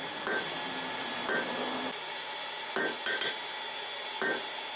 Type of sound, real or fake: real